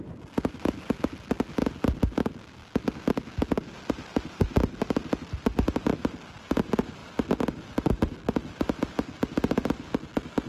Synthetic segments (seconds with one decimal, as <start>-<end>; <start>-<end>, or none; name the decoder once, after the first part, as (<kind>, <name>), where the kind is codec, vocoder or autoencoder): none